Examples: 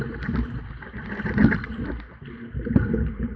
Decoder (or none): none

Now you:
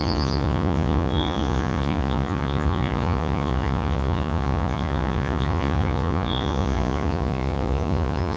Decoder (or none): vocoder, Vocos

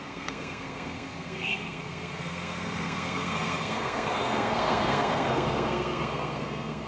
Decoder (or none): codec, SNAC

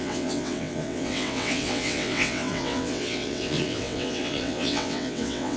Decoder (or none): vocoder, WaveNeXt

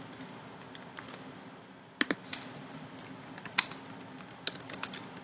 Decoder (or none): none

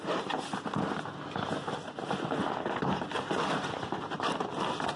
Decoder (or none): none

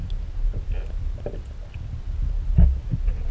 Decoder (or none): none